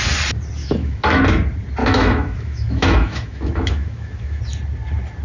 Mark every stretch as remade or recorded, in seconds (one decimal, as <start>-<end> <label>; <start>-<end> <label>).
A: 0.0-0.6 recorded; 0.6-1.2 remade; 1.2-1.8 recorded; 1.8-4.4 remade; 4.4-5.2 recorded